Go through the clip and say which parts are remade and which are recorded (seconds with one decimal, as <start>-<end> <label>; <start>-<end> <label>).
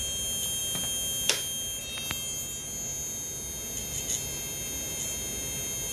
0.0-5.9 recorded